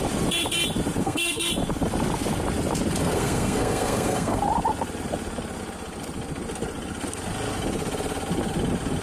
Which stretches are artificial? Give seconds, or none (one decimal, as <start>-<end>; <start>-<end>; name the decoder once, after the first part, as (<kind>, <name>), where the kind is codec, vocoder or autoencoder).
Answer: 1.0-1.5 (codec, SNAC); 3.0-4.4